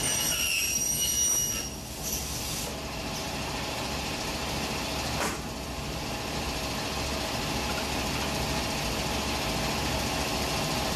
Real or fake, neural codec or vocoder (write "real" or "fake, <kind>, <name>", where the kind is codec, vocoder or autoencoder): real